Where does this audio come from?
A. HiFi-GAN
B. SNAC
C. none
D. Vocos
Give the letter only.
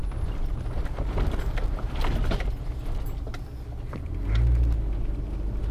C